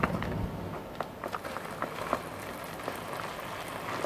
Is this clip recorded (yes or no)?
yes